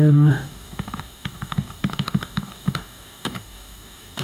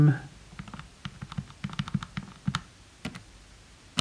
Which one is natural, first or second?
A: second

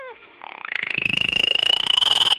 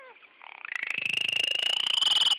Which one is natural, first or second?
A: second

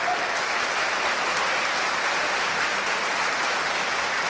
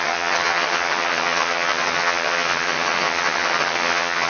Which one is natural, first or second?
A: first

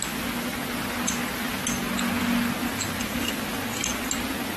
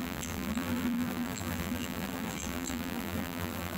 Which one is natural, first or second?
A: first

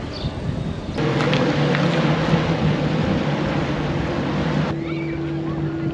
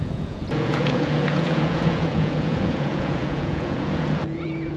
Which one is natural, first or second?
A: first